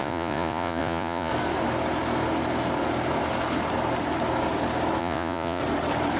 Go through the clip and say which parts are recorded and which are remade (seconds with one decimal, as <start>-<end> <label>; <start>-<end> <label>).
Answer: 0.0-1.3 remade; 1.3-5.0 recorded; 5.0-5.6 remade; 5.6-6.2 recorded